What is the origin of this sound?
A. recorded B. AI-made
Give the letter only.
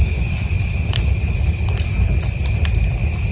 A